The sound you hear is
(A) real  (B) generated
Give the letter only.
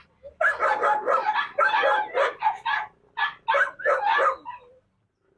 A